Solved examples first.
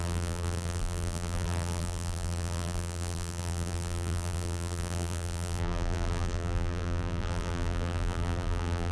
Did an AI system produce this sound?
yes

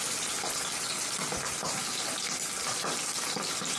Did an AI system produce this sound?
no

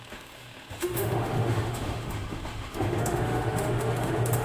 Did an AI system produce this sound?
yes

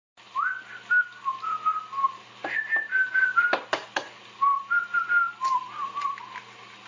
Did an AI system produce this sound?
no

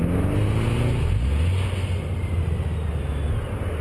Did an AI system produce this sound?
no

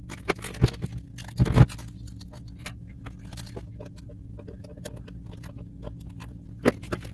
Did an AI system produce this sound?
no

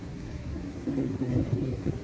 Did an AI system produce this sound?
yes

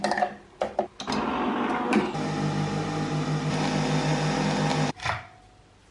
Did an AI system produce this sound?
no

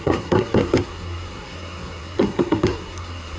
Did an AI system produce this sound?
yes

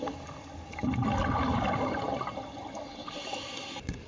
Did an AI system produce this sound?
no